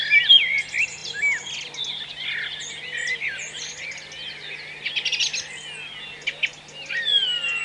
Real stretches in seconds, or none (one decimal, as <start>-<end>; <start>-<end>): 0.0-7.6